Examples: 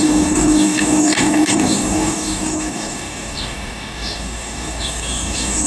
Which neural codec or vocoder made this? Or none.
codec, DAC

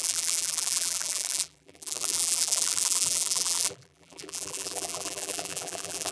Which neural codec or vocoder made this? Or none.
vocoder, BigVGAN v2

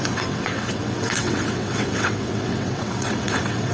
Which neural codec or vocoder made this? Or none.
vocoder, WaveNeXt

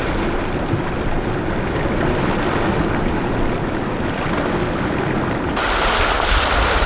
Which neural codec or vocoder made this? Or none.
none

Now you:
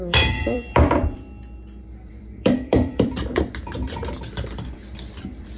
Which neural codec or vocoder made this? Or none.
vocoder, BigVGAN v2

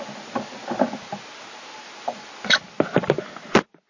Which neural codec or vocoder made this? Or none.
none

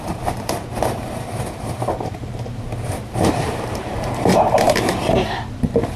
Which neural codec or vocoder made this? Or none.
vocoder, BigVGAN v2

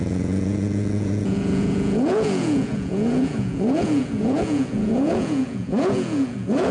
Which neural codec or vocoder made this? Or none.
vocoder, Vocos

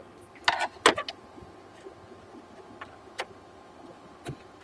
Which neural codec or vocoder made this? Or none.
none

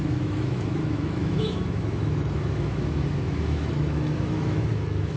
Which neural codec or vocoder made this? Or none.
autoencoder, DAC-VAE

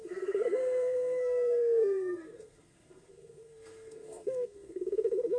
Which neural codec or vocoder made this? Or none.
codec, SNAC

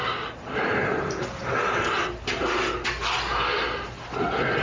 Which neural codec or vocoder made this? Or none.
none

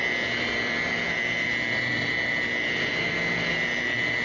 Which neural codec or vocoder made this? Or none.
vocoder, BigVGAN v2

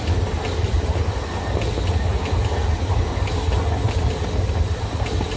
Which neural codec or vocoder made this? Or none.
none